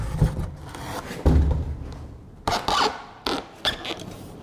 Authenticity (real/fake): real